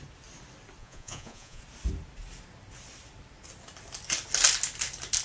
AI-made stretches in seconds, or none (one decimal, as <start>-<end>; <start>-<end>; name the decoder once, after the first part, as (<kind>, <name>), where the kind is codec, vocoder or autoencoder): 0.8-1.6 (vocoder, Vocos)